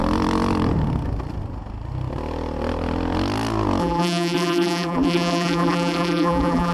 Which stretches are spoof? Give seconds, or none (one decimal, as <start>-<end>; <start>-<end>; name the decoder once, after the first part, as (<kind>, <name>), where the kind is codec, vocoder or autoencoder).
3.8-6.7 (vocoder, BigVGAN v2)